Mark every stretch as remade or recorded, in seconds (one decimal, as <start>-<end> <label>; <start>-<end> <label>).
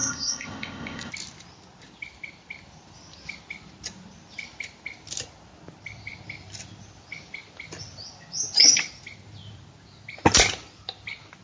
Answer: 0.0-1.1 remade; 1.1-11.4 recorded